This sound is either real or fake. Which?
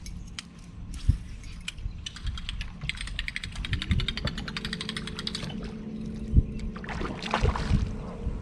real